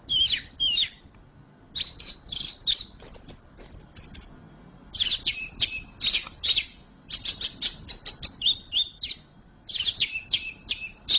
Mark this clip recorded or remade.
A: recorded